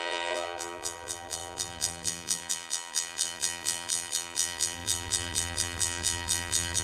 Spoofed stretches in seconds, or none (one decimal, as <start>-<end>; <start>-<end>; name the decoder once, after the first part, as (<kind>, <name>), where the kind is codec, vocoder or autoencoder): 0.0-6.8 (vocoder, BigVGAN v2)